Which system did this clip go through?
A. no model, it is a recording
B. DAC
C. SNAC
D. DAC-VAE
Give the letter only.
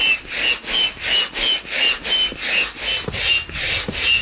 A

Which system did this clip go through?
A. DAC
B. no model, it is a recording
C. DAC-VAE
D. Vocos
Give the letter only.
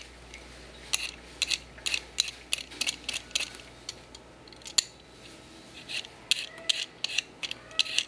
B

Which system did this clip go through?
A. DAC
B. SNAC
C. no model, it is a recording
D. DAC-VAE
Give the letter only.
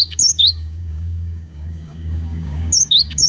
A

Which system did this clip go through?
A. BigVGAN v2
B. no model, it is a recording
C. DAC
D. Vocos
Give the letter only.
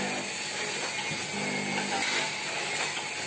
B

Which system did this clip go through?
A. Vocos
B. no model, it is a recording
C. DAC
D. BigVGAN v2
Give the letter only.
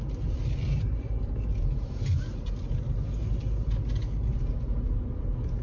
B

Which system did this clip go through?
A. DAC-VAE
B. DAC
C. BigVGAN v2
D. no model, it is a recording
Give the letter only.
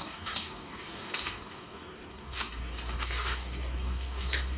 B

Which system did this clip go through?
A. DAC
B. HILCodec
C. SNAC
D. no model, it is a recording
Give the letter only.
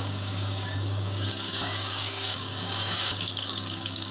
A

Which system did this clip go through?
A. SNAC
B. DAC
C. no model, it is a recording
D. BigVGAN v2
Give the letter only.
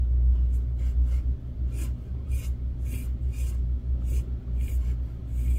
C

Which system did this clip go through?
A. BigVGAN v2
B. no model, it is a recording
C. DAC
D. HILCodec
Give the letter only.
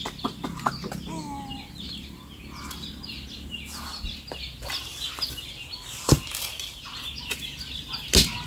B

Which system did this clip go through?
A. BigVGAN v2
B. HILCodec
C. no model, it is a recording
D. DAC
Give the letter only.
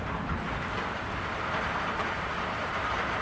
C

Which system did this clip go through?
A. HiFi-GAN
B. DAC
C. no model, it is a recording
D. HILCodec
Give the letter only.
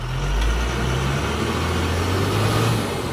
C